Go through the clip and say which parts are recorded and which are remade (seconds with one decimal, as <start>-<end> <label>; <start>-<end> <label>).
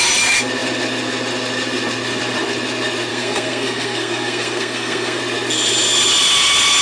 0.0-3.1 recorded; 3.1-5.2 remade; 5.2-6.8 recorded